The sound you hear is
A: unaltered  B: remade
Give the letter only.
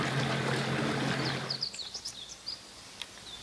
A